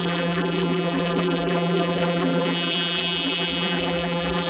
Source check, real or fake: fake